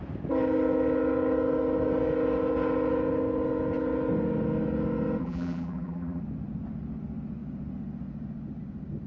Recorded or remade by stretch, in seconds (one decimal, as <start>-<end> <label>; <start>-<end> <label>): 0.0-5.2 recorded; 5.2-6.2 remade; 6.2-9.1 recorded